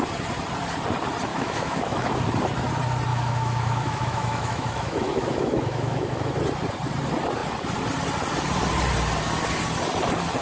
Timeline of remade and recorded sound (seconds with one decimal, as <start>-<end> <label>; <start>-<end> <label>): 0.0-1.3 recorded; 1.3-2.2 remade; 2.2-3.1 recorded; 3.1-6.3 remade; 6.3-10.4 recorded